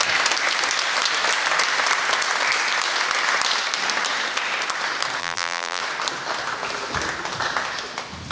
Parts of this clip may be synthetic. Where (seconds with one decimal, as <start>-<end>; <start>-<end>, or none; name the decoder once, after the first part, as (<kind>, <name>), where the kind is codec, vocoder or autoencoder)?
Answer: 5.2-5.8 (vocoder, BigVGAN v2)